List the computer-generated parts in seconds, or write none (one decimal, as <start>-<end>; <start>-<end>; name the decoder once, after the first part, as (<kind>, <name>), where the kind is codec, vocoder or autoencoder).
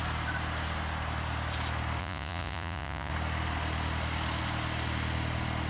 2.0-3.1 (vocoder, Vocos)